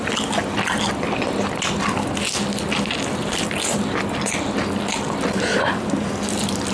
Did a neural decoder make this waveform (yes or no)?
no